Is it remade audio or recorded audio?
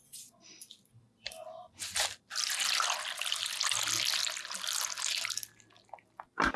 recorded